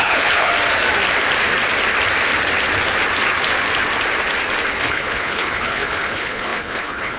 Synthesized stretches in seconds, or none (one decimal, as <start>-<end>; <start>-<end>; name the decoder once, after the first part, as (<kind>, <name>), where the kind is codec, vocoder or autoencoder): 0.0-0.5 (codec, HILCodec); 4.8-7.2